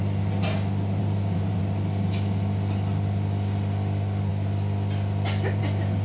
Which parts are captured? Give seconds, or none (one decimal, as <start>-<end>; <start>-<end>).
0.0-1.0; 1.6-6.0